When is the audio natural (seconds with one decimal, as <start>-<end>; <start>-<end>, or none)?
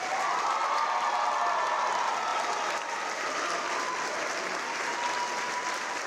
0.0-6.1